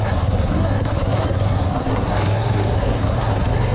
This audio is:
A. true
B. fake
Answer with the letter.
B